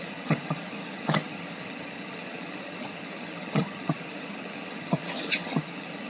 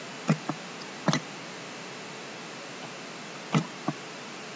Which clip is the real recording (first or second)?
second